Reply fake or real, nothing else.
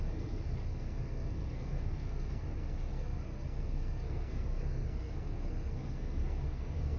fake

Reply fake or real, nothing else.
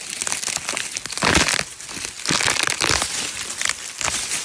real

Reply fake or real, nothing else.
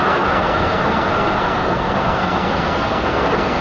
fake